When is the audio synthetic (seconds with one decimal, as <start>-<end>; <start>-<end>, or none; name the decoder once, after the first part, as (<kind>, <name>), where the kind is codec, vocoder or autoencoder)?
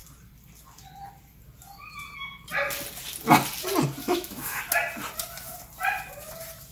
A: 4.0-4.6 (autoencoder, DAC-VAE)